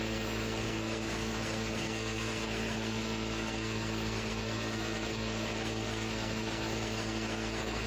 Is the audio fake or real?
fake